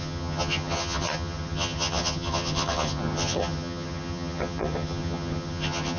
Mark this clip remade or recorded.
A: remade